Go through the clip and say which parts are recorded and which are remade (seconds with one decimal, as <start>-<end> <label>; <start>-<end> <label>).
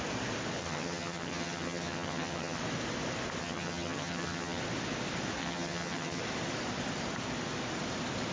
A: 0.0-0.6 recorded; 0.6-2.6 remade; 2.6-3.4 recorded; 3.4-4.6 remade; 4.6-5.4 recorded; 5.4-6.2 remade; 6.2-8.3 recorded